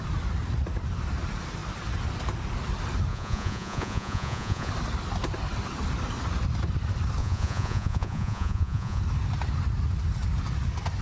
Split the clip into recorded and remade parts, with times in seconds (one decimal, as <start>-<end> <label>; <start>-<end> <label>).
0.0-3.1 recorded; 3.1-4.7 remade; 4.7-7.2 recorded; 7.2-9.0 remade; 9.0-11.0 recorded